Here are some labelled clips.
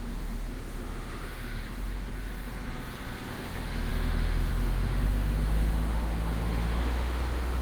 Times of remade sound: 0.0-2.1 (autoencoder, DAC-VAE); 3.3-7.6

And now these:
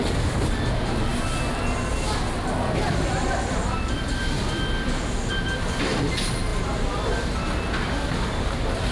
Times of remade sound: 0.0-1.1 (vocoder, BigVGAN v2); 5.3-6.5; 8.5-8.9

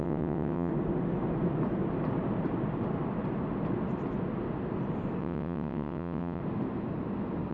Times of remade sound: 0.0-0.7 (vocoder, WaveNeXt); 5.2-6.4

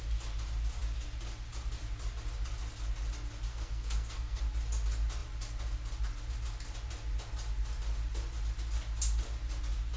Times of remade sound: 3.5-4.4 (codec, SNAC)

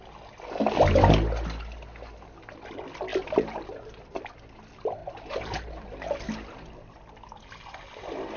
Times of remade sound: 3.1-4.2 (vocoder, BigVGAN v2); 5.0-6.9

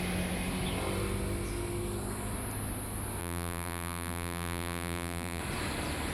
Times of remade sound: 3.2-5.4 (vocoder, BigVGAN v2)

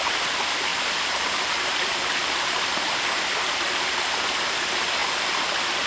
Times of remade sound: 0.7-4.2 (vocoder, BigVGAN v2)

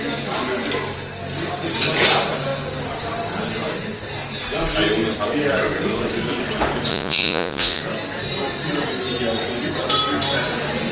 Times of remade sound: 6.9-7.8 (vocoder, Vocos)